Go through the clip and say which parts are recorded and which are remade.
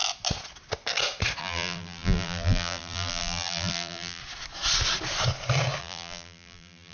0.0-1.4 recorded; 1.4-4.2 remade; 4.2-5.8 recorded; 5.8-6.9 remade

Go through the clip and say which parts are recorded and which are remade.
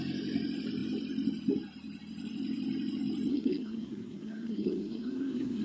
0.0-3.3 recorded; 3.3-5.6 remade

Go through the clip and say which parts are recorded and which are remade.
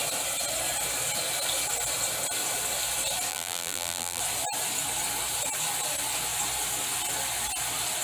0.0-3.3 recorded; 3.3-4.2 remade; 4.2-8.0 recorded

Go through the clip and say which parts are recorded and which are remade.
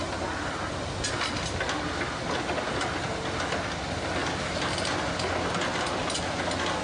0.0-6.8 recorded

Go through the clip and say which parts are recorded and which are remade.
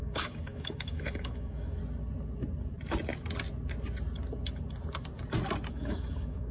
0.0-1.8 remade; 1.8-5.7 recorded; 5.7-6.5 remade